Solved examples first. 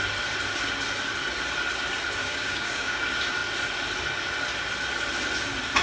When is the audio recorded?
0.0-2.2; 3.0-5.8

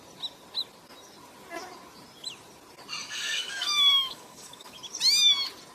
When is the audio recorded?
0.0-3.0; 4.8-5.7